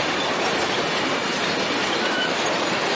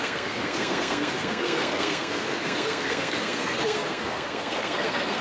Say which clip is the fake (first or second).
second